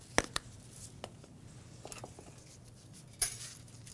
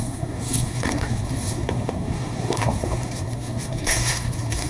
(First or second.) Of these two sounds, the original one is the first